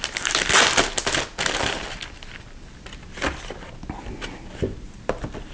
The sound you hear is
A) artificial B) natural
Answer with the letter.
B